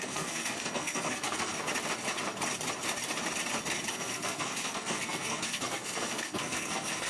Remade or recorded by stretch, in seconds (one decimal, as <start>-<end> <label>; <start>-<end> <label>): 0.0-1.5 remade; 1.5-3.9 recorded; 3.9-7.1 remade